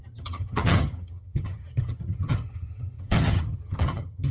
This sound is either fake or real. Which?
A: fake